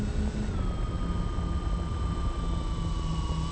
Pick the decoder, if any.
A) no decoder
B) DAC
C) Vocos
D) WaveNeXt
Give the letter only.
A